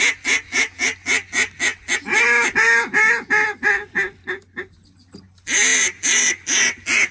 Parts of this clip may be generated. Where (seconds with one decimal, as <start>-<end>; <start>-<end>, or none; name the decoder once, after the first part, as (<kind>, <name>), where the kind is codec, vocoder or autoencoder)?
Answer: none

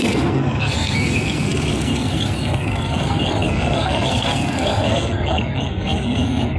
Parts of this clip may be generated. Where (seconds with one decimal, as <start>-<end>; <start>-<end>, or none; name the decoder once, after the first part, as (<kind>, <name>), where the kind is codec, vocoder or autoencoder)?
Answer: 0.0-6.6 (codec, SNAC)

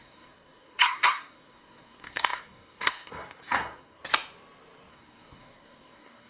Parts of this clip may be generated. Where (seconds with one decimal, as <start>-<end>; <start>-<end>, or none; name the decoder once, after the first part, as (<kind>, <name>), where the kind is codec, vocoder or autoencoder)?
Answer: 0.0-4.0 (codec, SNAC); 4.9-6.3